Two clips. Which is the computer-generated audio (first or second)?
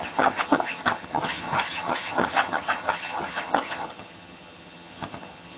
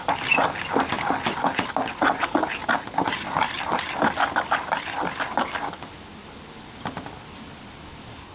first